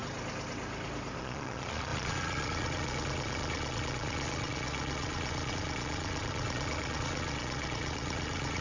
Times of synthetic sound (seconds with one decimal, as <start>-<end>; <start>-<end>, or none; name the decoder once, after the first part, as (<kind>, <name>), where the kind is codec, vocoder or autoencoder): 1.2-8.6 (vocoder, Vocos)